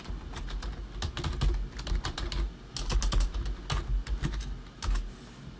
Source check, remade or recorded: recorded